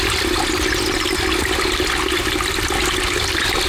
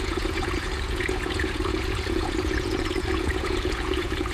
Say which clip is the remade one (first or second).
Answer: second